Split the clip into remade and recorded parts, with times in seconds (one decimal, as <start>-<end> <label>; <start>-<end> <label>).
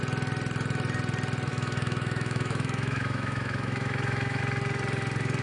0.0-1.5 recorded; 1.5-4.4 remade; 4.4-5.4 recorded